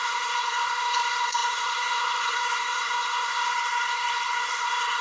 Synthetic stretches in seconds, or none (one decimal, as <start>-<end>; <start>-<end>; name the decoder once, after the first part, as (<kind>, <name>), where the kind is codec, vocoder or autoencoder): 0.0-5.0 (codec, SNAC)